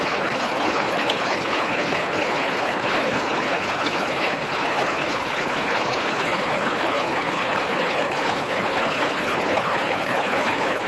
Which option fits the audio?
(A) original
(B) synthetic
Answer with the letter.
B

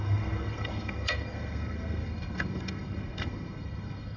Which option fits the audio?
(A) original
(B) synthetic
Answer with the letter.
B